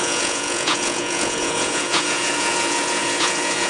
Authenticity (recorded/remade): remade